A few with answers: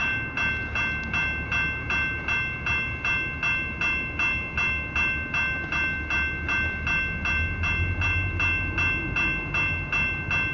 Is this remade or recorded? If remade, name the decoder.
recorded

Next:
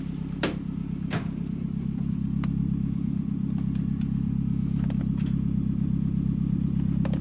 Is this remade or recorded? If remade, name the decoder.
remade, vocoder, BigVGAN v2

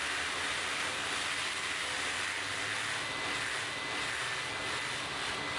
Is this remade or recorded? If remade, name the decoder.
recorded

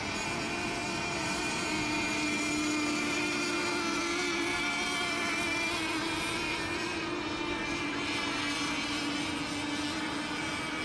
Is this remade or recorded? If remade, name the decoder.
recorded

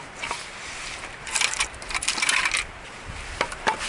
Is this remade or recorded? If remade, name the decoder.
remade, vocoder, BigVGAN v2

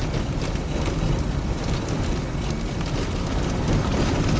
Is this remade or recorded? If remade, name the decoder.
recorded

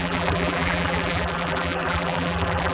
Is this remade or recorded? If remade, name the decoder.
remade, vocoder, BigVGAN v2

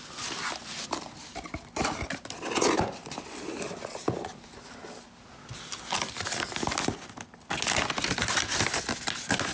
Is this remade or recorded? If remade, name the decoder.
recorded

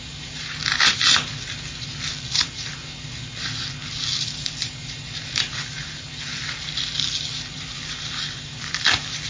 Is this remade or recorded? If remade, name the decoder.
remade, vocoder, BigVGAN v2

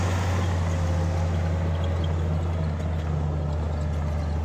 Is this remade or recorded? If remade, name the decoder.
recorded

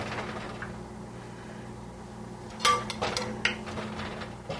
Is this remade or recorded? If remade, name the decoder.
recorded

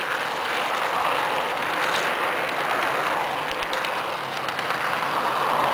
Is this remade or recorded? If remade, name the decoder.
recorded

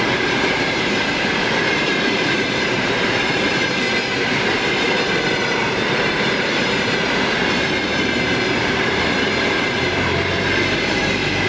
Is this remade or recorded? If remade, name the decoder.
remade, vocoder, BigVGAN v2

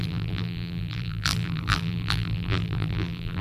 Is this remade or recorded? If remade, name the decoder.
remade, vocoder, BigVGAN v2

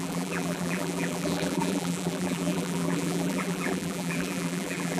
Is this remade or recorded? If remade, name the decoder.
remade, vocoder, BigVGAN v2